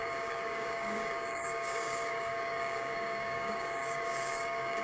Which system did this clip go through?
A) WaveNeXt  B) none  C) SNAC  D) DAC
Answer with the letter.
D